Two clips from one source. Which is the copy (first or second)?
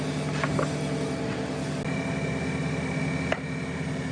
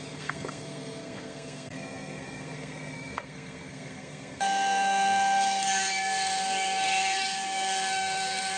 second